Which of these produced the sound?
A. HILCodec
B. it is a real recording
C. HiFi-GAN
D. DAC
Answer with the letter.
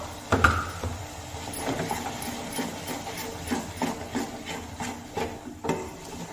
B